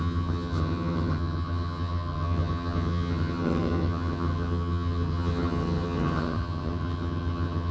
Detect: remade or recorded remade